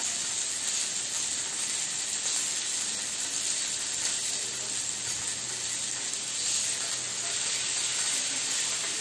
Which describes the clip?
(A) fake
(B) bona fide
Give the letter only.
B